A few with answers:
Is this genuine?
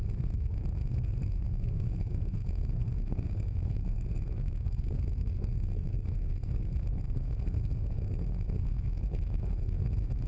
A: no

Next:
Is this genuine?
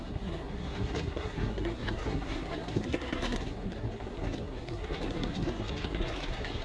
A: no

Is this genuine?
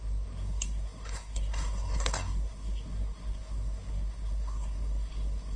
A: no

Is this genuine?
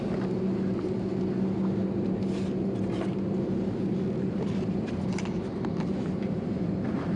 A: yes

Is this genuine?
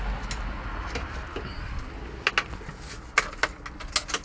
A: yes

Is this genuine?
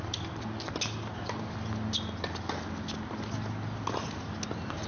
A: yes